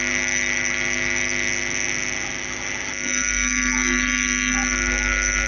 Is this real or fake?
real